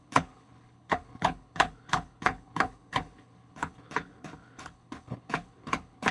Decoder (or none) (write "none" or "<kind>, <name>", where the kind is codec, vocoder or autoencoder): codec, HILCodec